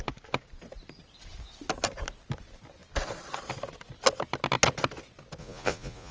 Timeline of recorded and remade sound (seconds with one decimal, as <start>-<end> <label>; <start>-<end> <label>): 0.0-5.4 recorded; 5.4-6.1 remade